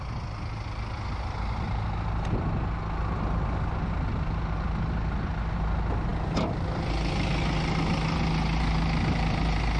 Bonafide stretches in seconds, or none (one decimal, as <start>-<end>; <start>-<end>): 0.0-9.8